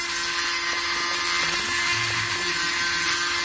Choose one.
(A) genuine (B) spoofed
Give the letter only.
A